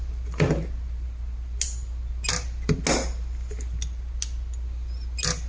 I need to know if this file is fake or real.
real